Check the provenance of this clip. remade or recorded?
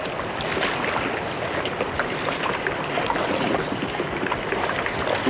recorded